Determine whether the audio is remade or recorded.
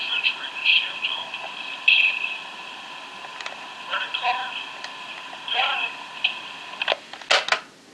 recorded